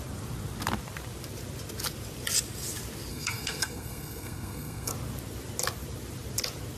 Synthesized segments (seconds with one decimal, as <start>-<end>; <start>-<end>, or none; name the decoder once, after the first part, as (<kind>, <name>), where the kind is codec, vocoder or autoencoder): 3.1-4.9 (codec, SNAC)